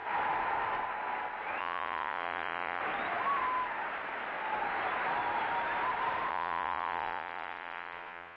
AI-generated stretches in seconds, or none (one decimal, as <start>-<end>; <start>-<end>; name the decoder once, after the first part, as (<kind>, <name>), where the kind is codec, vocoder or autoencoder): 1.6-2.8 (vocoder, Vocos); 6.3-8.4